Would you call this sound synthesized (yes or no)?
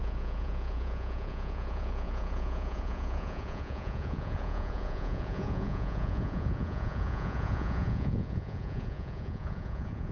yes